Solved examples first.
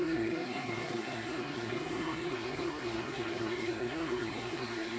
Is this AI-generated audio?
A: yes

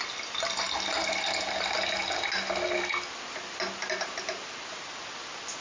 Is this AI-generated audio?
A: no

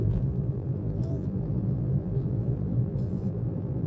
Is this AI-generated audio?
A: yes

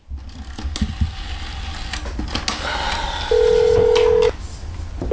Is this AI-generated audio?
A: no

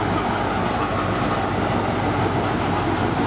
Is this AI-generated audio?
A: no